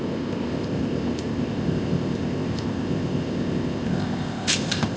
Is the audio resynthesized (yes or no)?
yes